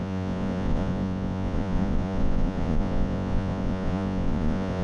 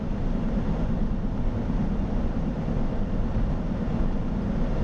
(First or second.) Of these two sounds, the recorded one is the second